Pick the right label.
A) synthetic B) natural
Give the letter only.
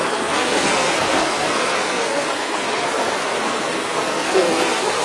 A